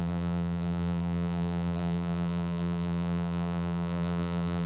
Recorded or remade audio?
remade